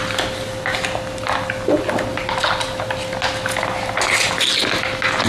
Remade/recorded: recorded